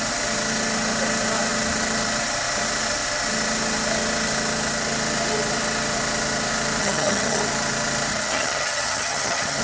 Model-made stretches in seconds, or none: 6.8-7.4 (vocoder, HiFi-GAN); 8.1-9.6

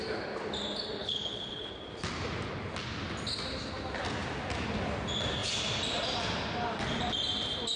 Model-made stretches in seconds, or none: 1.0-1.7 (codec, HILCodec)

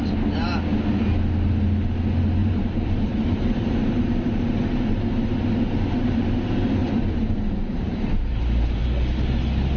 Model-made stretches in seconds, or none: 2.4-4.5 (vocoder, BigVGAN v2); 6.8-8.8

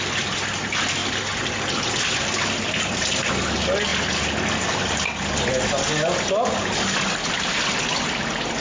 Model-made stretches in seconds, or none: none